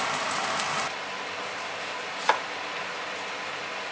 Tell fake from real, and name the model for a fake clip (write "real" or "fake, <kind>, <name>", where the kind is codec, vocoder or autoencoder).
real